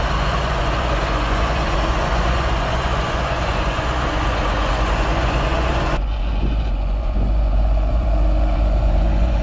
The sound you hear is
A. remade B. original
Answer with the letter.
A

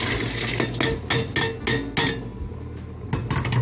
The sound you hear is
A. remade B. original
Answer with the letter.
B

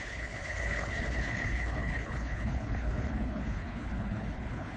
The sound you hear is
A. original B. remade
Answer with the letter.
B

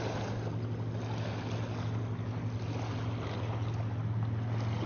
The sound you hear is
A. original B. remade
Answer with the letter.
A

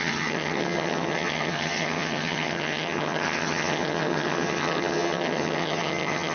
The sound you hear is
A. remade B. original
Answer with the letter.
A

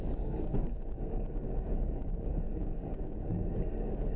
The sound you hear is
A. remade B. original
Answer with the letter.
A